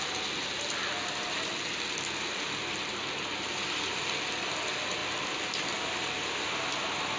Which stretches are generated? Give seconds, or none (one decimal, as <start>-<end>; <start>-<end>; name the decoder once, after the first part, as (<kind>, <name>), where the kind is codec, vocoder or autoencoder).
none